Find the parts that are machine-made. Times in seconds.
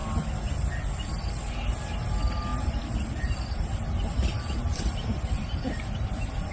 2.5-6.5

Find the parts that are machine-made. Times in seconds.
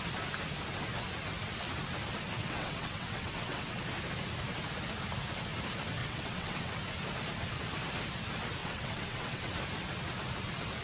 2.4-3.8; 6.0-6.7; 8.6-9.6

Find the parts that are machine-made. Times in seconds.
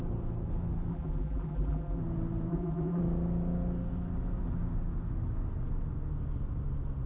0.9-2.0; 2.5-3.0